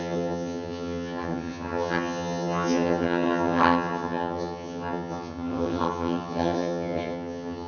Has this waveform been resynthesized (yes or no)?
yes